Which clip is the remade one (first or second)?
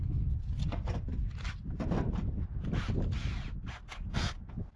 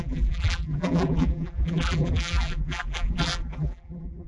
second